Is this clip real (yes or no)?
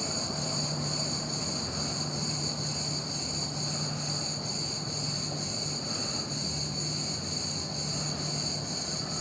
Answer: no